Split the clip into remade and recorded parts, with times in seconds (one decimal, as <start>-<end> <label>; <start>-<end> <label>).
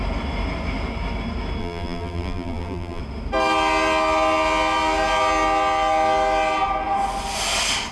0.0-1.6 recorded; 1.6-3.0 remade; 3.0-7.9 recorded